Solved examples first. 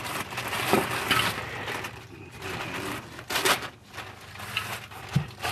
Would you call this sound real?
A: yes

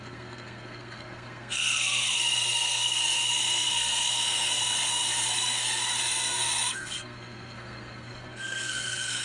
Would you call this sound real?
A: no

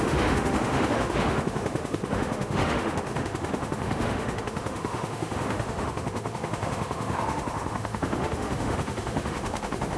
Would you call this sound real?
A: no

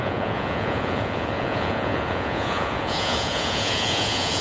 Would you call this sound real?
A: no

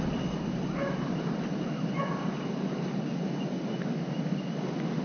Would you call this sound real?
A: yes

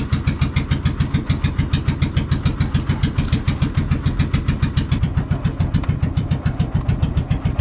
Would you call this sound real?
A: yes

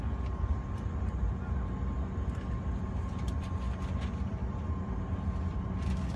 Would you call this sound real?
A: yes